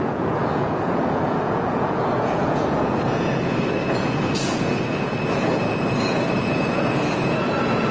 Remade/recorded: remade